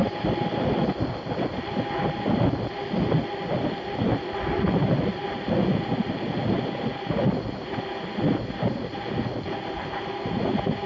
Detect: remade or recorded recorded